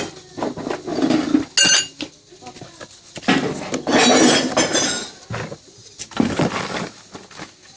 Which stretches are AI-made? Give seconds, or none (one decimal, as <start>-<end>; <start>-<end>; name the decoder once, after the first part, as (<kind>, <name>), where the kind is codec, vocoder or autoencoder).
none